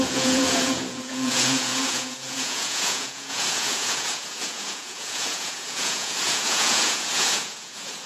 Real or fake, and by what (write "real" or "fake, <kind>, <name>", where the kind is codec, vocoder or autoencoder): fake, vocoder, Vocos